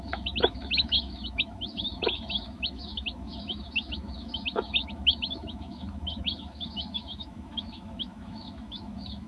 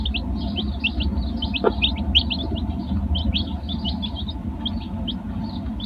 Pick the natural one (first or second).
second